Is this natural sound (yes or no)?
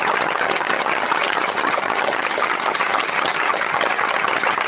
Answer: no